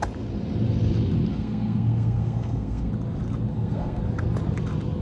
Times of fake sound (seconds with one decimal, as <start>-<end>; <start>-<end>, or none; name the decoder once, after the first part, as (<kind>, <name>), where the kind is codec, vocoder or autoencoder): 1.3-2.9 (codec, SNAC); 3.5-4.0